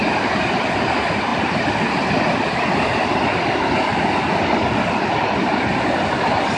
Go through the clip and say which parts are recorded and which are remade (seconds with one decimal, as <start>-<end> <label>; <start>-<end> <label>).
0.0-6.6 recorded